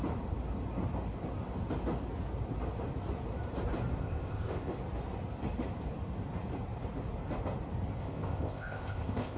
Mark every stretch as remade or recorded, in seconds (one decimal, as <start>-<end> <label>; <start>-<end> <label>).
0.0-4.0 recorded; 4.0-4.7 remade; 4.7-8.0 recorded; 8.0-9.4 remade